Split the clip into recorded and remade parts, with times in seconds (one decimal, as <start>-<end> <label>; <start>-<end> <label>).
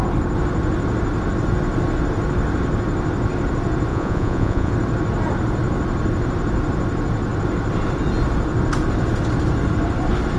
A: 0.0-3.9 recorded; 3.9-4.7 remade; 4.7-10.4 recorded